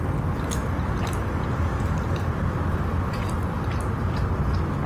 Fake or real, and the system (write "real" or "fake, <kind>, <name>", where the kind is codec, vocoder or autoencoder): real